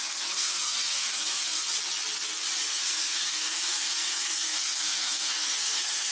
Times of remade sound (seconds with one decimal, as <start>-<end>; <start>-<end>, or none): 0.0-1.7; 2.7-6.1